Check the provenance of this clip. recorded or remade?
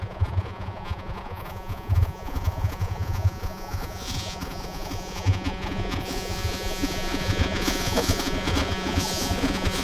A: remade